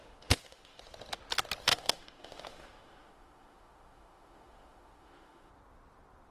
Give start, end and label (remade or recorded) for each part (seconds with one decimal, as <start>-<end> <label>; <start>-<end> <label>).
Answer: 0.0-0.8 remade; 0.8-1.7 recorded; 1.7-5.5 remade; 5.5-6.3 recorded